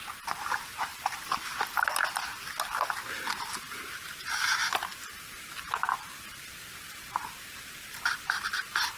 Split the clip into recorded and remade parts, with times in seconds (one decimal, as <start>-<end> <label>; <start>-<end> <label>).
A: 0.0-0.9 remade; 0.9-3.1 recorded; 3.1-4.6 remade; 4.6-5.4 recorded; 5.4-9.0 remade

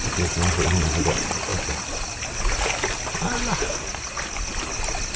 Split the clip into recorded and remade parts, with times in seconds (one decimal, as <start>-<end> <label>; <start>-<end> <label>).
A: 0.0-5.2 recorded